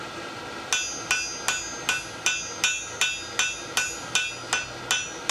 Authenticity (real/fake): real